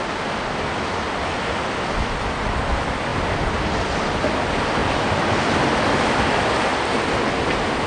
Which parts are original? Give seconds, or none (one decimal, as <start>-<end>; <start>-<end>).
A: 0.0-3.1; 3.6-6.7